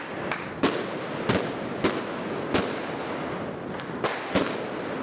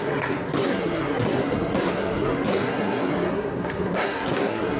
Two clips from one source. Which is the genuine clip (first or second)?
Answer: first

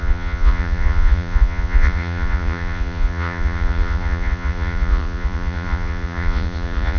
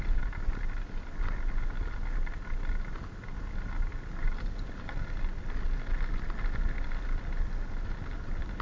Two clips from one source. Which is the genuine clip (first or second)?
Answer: second